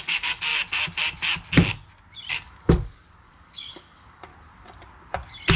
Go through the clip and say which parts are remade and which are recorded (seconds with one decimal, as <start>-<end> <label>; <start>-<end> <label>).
0.0-0.5 remade; 0.5-2.3 recorded; 2.3-4.3 remade; 4.3-5.6 recorded

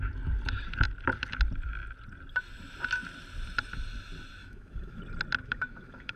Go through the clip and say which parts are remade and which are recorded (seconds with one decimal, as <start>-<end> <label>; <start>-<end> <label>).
0.0-4.4 recorded; 4.4-5.0 remade; 5.0-5.4 recorded; 5.4-6.2 remade

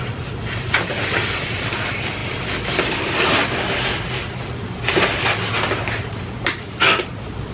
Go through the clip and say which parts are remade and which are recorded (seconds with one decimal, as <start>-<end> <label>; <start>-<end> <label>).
0.0-7.5 recorded

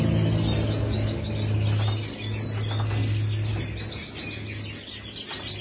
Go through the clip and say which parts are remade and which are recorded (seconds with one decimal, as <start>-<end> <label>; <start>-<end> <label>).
0.0-5.6 recorded

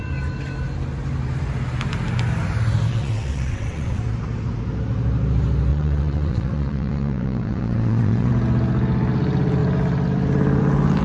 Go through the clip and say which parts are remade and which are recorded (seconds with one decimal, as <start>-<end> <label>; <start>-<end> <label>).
0.0-2.9 recorded; 2.9-4.0 remade; 4.0-5.7 recorded; 5.7-8.3 remade; 8.3-11.0 recorded

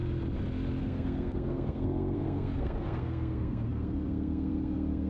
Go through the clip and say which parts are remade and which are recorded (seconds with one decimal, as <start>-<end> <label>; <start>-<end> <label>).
0.0-0.8 recorded; 0.8-5.1 remade